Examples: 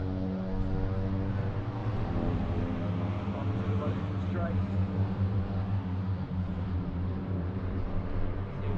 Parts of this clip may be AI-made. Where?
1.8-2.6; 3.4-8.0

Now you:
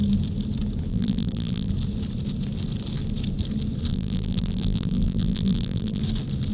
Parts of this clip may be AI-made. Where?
0.9-1.7; 3.9-6.0

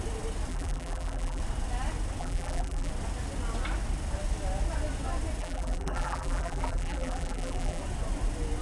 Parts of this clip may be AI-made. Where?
0.5-1.4; 2.2-2.9; 5.4-7.8